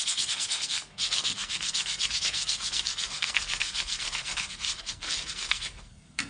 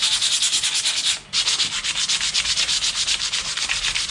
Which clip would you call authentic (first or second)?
second